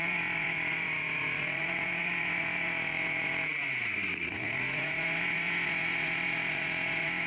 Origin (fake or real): fake